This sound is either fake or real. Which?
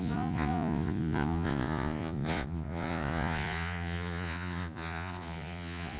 fake